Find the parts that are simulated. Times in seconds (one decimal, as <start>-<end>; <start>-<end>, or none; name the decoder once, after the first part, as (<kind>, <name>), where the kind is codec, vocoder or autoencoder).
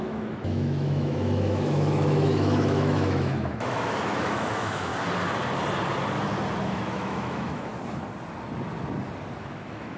0.0-4.9 (autoencoder, DAC-VAE); 6.6-7.7; 9.4-10.0